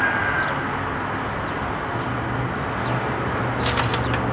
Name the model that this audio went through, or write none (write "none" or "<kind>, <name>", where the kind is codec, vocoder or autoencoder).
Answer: none